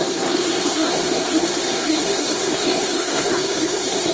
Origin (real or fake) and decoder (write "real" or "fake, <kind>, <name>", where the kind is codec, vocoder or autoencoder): fake, codec, SNAC